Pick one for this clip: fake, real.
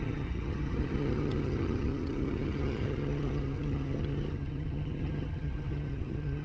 fake